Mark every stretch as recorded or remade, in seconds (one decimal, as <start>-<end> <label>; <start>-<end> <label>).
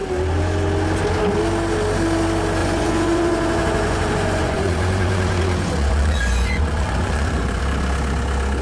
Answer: 0.0-2.6 recorded; 2.6-7.6 remade; 7.6-8.6 recorded